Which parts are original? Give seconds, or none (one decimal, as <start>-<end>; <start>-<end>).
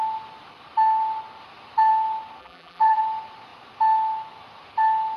0.0-2.4; 3.0-5.2